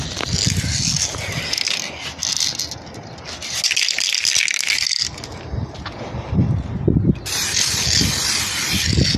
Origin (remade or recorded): recorded